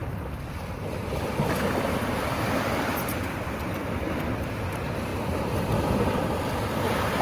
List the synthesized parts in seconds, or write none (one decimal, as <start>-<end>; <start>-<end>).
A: 2.2-7.2